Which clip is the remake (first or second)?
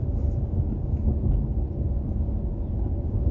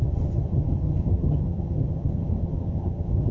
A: second